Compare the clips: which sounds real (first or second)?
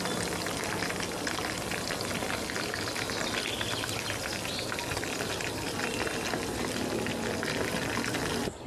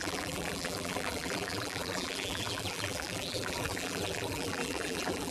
first